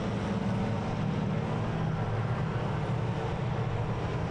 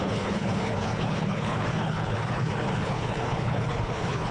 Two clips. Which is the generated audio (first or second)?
second